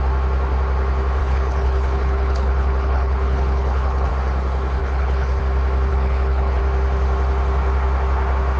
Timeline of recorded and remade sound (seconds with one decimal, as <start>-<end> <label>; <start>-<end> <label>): 0.0-1.2 recorded; 1.2-4.1 remade; 4.1-4.8 recorded; 4.8-5.4 remade; 5.4-5.9 recorded; 5.9-6.6 remade; 6.6-8.6 recorded